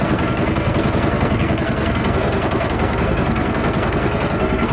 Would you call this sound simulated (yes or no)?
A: yes